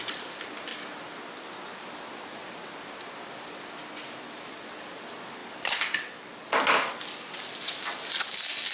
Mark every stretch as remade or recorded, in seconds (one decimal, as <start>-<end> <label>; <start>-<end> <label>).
0.0-8.7 recorded